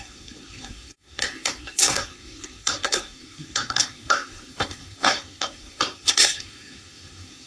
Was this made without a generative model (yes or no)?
no